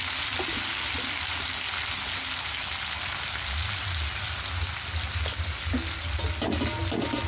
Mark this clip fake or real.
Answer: real